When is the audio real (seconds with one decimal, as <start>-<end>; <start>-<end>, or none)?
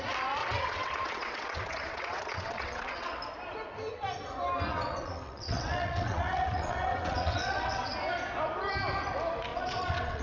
0.0-0.4; 3.2-4.7; 7.8-9.5